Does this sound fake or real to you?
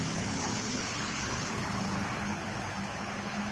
fake